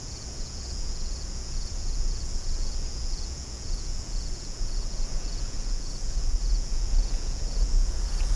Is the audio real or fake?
fake